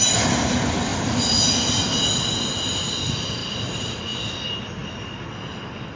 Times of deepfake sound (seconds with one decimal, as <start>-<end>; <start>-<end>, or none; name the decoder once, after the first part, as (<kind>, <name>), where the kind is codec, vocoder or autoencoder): 3.4-4.0 (vocoder, BigVGAN v2)